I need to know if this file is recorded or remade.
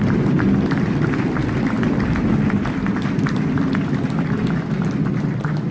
recorded